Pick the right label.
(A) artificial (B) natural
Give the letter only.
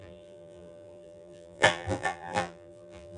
A